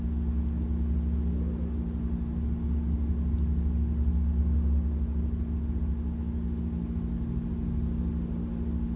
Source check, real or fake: real